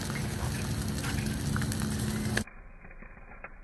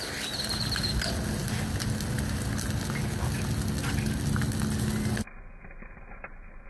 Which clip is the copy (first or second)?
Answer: first